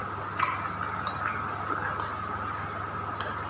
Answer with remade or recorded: recorded